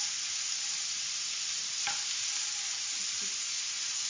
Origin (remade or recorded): recorded